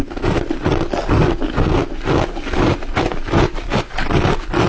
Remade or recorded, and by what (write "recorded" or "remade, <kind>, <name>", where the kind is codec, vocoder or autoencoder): recorded